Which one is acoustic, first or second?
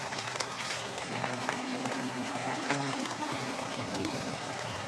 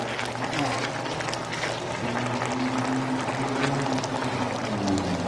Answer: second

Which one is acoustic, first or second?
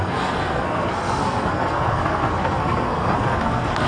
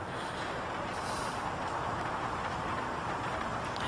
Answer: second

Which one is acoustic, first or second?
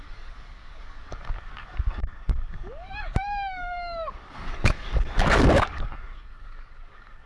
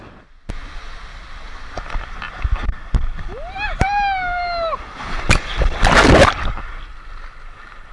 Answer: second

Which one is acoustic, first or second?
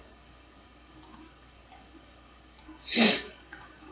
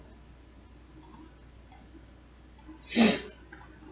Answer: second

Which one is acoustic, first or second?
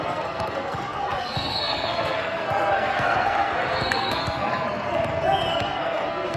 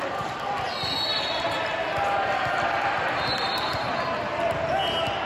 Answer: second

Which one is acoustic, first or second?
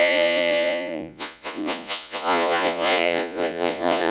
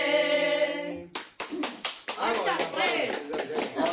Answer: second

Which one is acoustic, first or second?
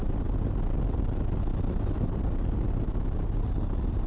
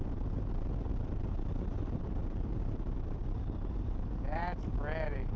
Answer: first